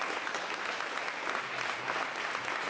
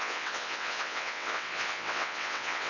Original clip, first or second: first